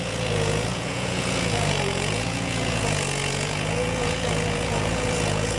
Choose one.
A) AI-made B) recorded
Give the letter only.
A